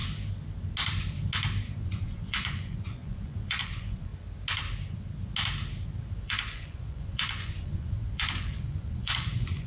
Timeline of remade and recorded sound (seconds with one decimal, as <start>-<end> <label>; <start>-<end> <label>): 0.0-1.8 recorded; 1.8-4.1 remade; 4.1-6.1 recorded; 6.1-9.7 remade